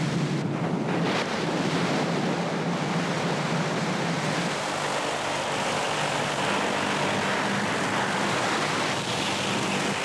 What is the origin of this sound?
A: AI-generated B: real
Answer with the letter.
B